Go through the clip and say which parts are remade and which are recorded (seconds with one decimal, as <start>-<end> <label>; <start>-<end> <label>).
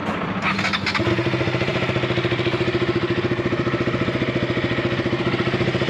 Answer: 0.0-5.9 recorded